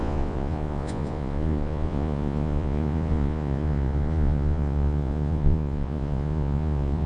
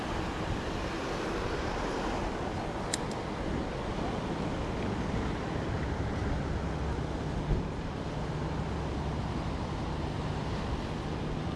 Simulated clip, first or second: first